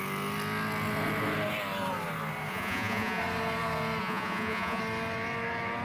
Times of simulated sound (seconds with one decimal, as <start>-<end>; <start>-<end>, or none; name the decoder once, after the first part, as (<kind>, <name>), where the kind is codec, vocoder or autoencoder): 2.5-3.2 (vocoder, Vocos); 4.0-4.8